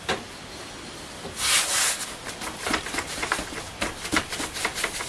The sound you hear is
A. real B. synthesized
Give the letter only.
A